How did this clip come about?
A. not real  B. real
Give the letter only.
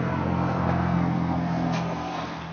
A